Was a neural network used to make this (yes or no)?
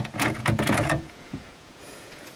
yes